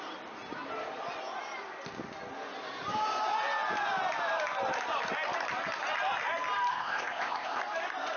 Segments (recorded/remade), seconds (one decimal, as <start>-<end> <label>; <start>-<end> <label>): 0.0-6.7 recorded; 6.7-7.6 remade; 7.6-8.2 recorded